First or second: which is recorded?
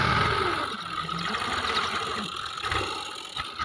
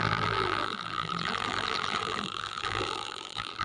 first